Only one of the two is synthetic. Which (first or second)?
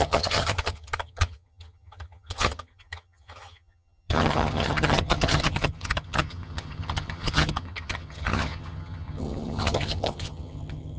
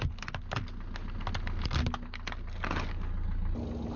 first